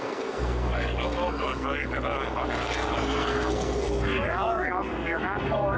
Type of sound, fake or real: fake